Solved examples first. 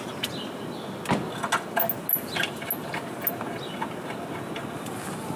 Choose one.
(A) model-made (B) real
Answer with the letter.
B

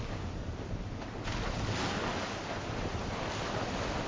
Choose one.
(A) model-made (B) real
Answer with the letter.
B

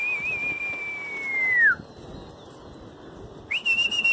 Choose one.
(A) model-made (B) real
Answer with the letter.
B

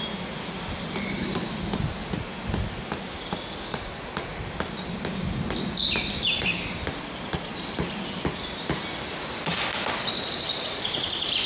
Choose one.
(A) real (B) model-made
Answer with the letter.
A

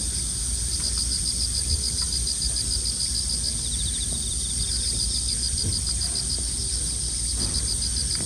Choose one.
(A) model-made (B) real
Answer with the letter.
B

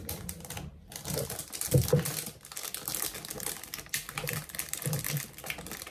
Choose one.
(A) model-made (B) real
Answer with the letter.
B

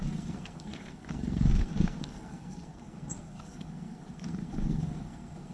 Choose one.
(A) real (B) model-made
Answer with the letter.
B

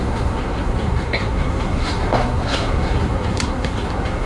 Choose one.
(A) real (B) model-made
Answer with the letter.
B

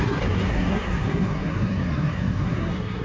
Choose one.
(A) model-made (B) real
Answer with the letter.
A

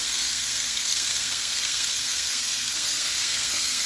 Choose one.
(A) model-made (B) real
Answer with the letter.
A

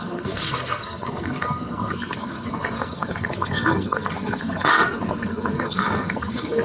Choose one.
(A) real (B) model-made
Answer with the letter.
B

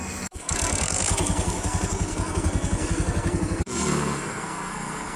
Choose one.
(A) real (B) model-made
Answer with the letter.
B